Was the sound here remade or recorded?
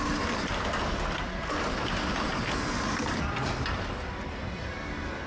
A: recorded